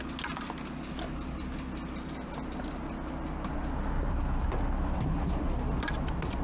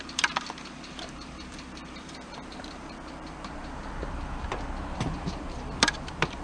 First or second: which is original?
first